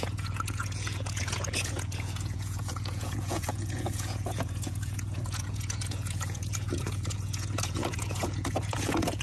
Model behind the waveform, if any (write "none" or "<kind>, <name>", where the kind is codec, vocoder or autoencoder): vocoder, Vocos